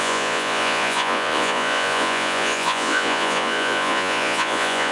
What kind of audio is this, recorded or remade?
remade